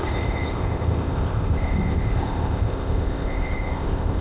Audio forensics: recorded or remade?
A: remade